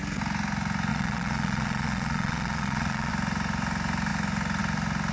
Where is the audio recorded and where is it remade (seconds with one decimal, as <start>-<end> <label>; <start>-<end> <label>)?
0.0-0.9 recorded; 0.9-3.1 remade; 3.1-5.1 recorded